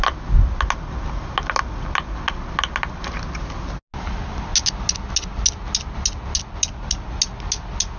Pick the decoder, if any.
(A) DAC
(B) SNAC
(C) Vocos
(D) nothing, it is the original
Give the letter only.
D